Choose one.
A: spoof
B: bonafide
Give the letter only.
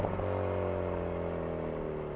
B